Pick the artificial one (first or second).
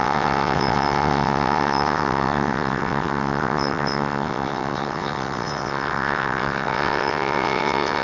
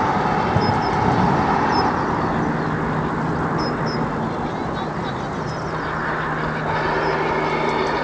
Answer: first